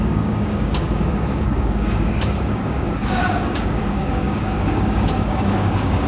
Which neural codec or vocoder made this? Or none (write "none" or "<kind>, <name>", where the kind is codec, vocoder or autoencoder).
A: codec, DAC